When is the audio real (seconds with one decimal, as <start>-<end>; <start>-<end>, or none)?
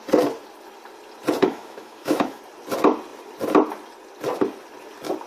0.0-1.4; 2.4-5.3